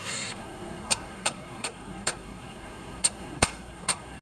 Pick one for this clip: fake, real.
fake